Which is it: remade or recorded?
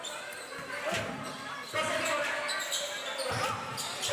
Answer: recorded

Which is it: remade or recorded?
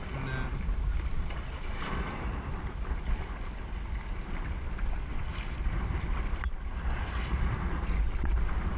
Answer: recorded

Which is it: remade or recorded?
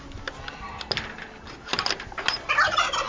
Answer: recorded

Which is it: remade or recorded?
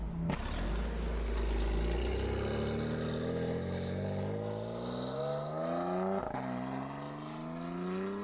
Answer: recorded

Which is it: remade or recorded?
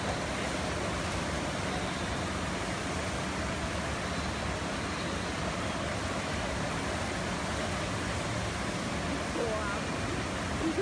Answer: recorded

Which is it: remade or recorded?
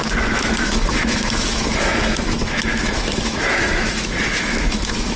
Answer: remade